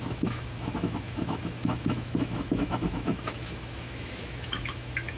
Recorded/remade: remade